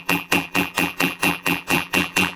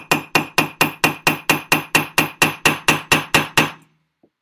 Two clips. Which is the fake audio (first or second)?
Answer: first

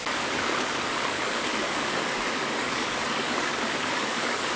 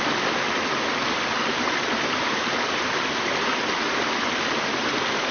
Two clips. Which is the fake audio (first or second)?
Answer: first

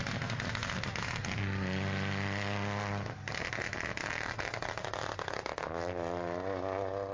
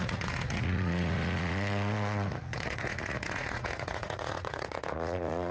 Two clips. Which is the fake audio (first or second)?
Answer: second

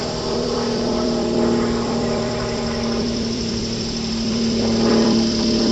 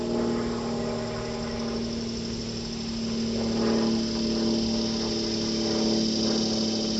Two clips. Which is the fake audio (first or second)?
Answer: first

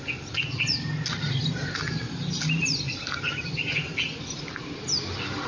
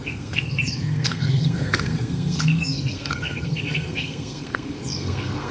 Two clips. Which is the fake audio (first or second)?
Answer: second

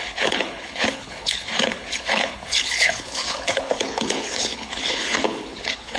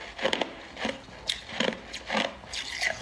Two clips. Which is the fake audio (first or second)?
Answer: first